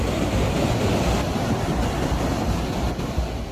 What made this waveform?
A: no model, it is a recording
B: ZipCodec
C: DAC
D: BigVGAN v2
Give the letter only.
A